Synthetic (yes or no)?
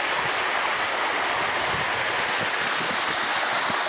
no